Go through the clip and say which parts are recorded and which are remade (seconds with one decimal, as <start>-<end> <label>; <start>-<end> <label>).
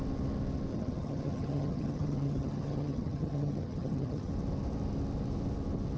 0.0-0.7 recorded; 0.7-4.3 remade; 4.3-6.0 recorded